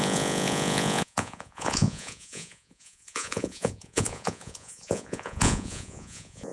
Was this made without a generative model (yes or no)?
no